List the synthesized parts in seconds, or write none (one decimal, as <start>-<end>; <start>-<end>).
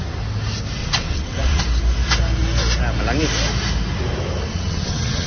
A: 0.8-1.6; 4.5-5.3